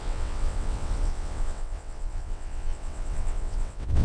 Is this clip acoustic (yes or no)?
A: no